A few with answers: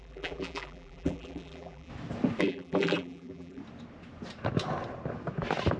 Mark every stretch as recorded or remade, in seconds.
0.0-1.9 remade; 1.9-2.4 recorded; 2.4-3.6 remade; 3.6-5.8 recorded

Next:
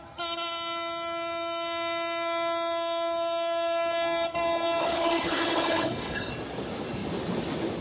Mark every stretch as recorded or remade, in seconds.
0.0-4.8 recorded; 4.8-6.3 remade; 6.3-7.8 recorded

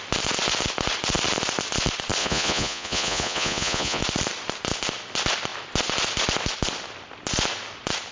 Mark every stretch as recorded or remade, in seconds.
0.0-2.2 recorded; 2.2-4.0 remade; 4.0-8.1 recorded

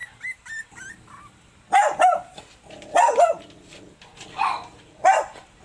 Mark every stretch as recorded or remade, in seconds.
0.0-5.6 recorded

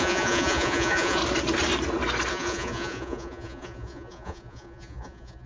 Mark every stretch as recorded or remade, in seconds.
0.0-1.2 remade; 1.2-2.3 recorded; 2.3-5.5 remade

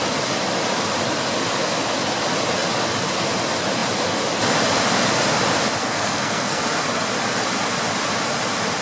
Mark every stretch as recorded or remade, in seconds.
0.0-5.8 recorded; 5.8-6.6 remade; 6.6-8.8 recorded